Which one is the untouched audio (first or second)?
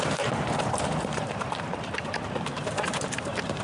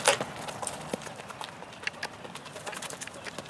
second